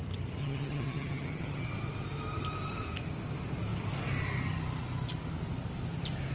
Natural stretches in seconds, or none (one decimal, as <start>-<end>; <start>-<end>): 0.0-0.4; 1.7-6.3